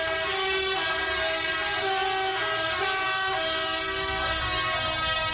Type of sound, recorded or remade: recorded